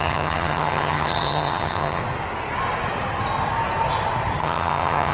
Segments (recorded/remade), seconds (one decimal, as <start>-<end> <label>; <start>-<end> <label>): 0.0-2.0 remade; 2.0-4.4 recorded; 4.4-5.1 remade